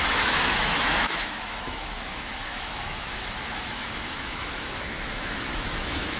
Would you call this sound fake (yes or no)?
yes